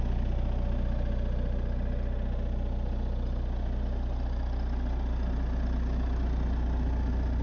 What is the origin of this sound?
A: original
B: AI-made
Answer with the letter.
A